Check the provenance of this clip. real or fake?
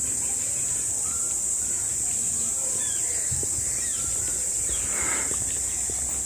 real